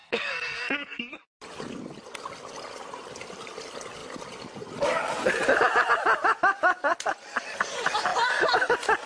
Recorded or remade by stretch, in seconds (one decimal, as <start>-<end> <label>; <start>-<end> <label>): 0.0-1.1 remade; 1.1-9.1 recorded